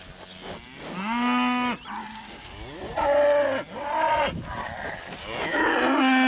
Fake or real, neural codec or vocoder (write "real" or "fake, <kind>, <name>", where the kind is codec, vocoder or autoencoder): real